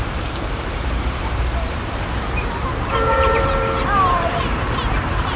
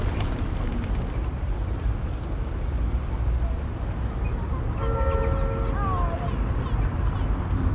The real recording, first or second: second